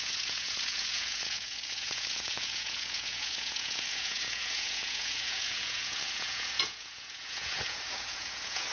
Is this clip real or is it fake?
fake